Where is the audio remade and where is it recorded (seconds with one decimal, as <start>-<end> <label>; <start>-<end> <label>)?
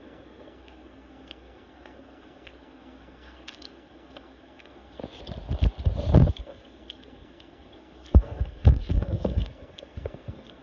0.0-5.0 remade; 5.0-6.4 recorded; 6.4-10.6 remade